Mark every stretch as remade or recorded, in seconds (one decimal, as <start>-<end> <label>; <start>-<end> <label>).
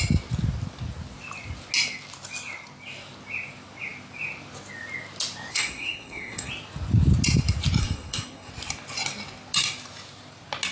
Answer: 0.0-5.5 recorded; 5.5-6.5 remade; 6.5-7.8 recorded; 7.8-8.5 remade; 8.5-10.7 recorded